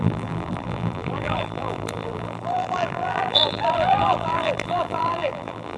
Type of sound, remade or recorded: remade